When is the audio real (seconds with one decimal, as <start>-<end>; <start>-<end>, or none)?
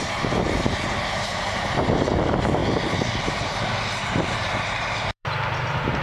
2.6-3.2